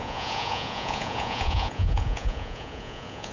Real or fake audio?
fake